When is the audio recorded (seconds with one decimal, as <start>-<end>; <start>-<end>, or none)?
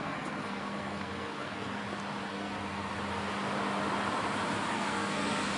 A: 1.8-2.3; 2.9-4.7